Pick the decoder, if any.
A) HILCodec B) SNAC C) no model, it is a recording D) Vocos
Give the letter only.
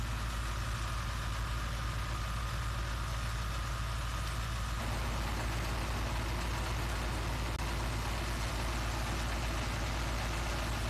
C